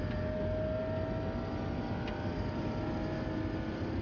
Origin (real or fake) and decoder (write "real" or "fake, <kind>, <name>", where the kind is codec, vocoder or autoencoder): real